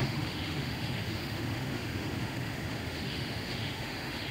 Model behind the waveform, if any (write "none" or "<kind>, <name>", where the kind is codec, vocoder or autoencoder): autoencoder, DAC-VAE